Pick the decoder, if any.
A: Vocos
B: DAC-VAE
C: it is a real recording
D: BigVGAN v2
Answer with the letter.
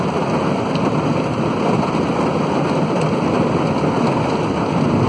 C